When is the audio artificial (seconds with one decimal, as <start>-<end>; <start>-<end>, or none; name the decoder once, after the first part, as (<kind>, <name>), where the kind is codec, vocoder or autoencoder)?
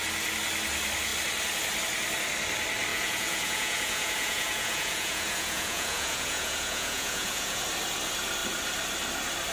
2.9-7.6 (vocoder, Vocos)